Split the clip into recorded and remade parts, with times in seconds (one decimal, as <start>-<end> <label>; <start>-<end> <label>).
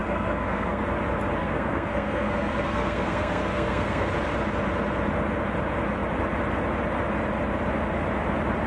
0.0-0.8 remade; 0.8-1.4 recorded; 1.4-4.1 remade; 4.1-8.7 recorded